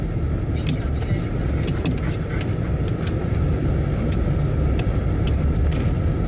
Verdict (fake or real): real